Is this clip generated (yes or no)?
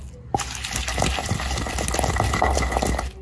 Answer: no